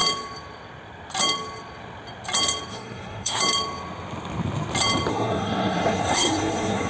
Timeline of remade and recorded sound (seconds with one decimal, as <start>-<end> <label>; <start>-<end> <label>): 0.0-2.7 recorded; 2.7-3.4 remade; 3.4-5.1 recorded; 5.1-6.9 remade